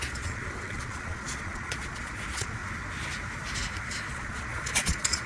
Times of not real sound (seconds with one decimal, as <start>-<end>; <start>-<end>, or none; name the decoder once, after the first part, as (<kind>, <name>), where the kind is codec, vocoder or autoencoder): 0.0-2.6 (vocoder, Vocos); 4.1-5.3